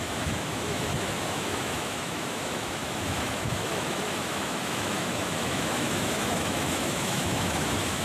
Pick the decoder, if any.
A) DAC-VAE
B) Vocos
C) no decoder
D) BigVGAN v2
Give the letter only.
A